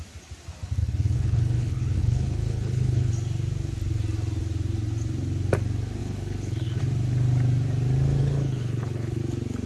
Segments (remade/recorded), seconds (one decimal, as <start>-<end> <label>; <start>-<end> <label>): 0.0-0.8 recorded; 0.8-3.1 remade; 3.1-6.0 recorded; 6.0-6.8 remade; 6.8-8.2 recorded; 8.2-9.2 remade; 9.2-9.7 recorded